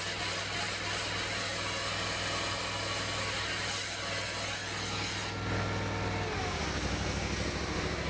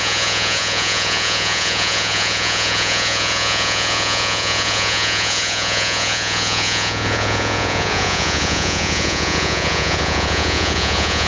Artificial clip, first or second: second